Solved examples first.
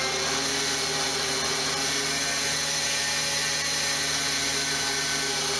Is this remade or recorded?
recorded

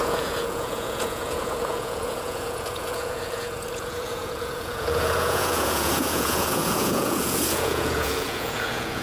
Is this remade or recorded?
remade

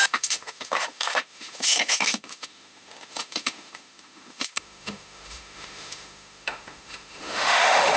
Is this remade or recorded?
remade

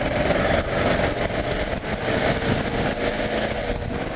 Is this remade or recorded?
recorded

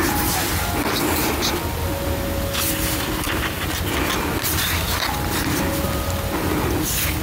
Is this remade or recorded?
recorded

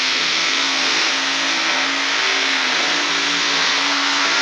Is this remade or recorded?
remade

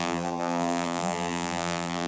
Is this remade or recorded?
remade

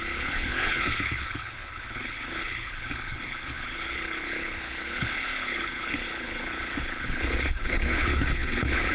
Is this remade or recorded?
remade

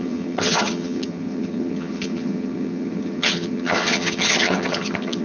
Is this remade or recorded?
remade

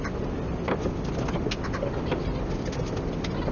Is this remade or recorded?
recorded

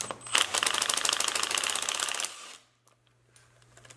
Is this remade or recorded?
recorded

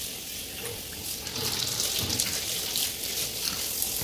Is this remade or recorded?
recorded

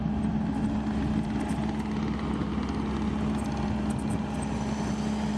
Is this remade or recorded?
recorded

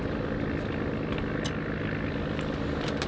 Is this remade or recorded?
recorded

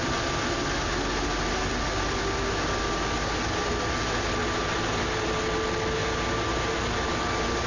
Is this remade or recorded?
recorded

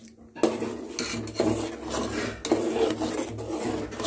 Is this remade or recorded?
recorded